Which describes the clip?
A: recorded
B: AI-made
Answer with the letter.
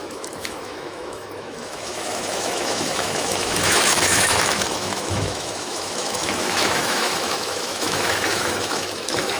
B